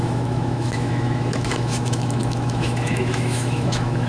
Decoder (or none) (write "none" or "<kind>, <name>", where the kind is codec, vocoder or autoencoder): autoencoder, DAC-VAE